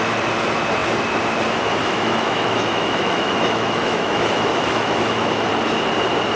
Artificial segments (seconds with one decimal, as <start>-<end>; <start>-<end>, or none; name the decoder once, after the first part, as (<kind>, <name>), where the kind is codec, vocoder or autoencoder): 1.8-5.5 (autoencoder, DAC-VAE)